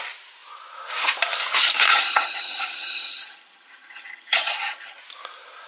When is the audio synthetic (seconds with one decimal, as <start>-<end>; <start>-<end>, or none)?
1.9-5.0